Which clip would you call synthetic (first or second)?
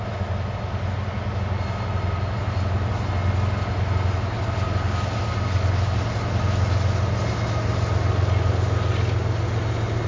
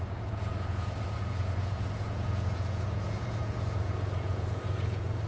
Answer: second